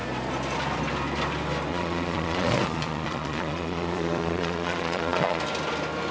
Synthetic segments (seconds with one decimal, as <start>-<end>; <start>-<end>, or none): 1.7-5.4